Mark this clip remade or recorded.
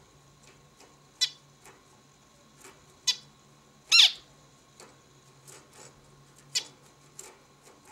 recorded